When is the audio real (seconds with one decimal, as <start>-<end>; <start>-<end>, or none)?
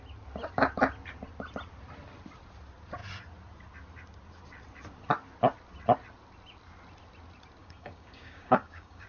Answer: 0.0-7.6